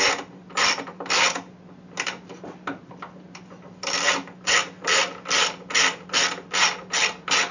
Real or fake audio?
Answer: real